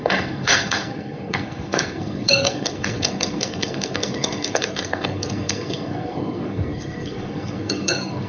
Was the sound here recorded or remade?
remade